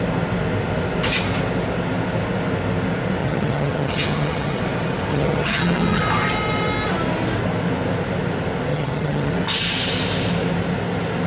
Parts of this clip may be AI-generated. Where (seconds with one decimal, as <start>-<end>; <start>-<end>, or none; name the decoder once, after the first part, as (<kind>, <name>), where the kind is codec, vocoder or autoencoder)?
3.2-4.6 (vocoder, HiFi-GAN); 5.1-6.0; 8.7-9.3